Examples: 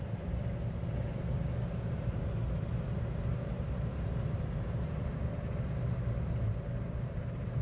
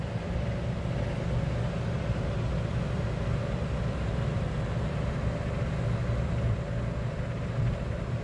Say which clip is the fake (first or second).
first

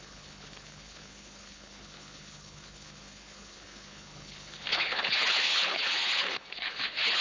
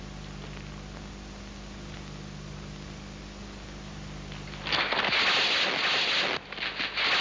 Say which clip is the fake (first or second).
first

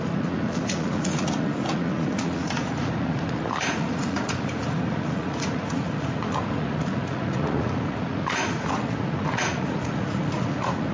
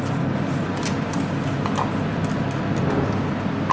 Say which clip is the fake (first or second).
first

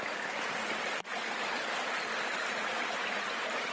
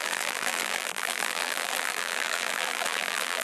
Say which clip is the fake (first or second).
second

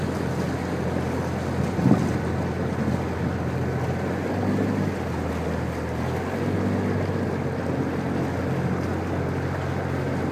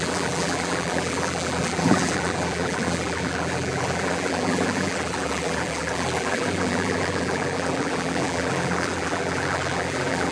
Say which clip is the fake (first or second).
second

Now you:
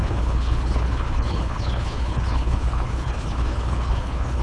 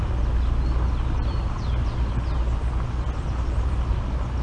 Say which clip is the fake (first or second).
first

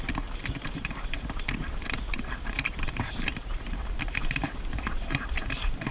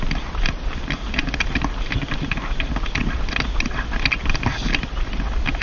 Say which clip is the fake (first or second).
first